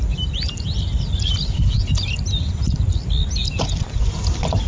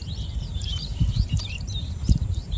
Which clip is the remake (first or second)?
second